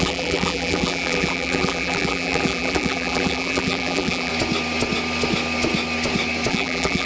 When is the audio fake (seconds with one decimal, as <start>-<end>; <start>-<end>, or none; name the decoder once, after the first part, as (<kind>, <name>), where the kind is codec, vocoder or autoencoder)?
0.0-4.3 (vocoder, BigVGAN v2); 6.5-7.1